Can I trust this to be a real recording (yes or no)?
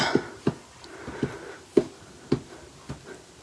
yes